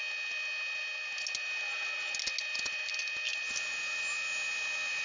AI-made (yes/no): no